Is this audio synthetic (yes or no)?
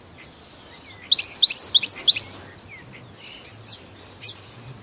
no